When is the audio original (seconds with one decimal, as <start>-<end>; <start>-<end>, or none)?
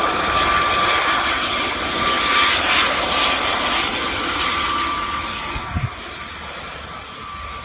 0.0-5.3; 5.8-7.6